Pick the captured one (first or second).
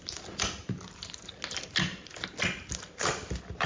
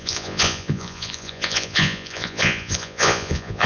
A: first